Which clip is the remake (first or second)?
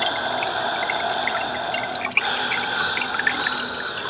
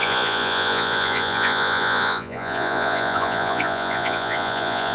second